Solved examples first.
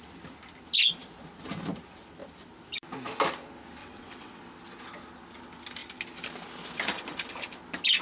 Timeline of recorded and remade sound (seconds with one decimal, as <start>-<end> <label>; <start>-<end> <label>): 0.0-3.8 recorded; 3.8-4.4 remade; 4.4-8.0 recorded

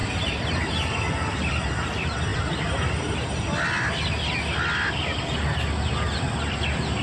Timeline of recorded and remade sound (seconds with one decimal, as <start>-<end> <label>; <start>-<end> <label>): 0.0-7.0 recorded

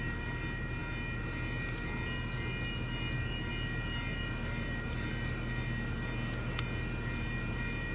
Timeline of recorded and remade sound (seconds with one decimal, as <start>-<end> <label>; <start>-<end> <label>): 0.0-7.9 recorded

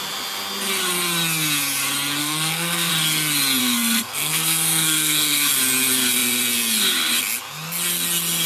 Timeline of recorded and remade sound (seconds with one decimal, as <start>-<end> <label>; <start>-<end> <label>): 0.0-2.2 recorded; 2.2-2.9 remade; 2.9-3.6 recorded; 3.6-5.5 remade; 5.5-8.5 recorded